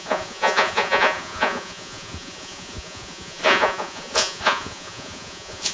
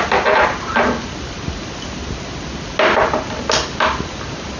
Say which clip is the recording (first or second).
second